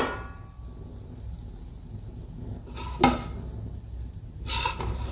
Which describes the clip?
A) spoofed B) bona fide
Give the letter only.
B